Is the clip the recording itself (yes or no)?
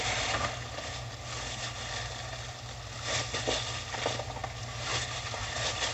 yes